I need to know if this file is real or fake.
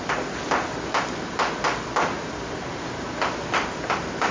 real